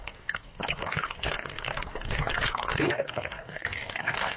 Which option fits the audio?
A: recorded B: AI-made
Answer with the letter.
B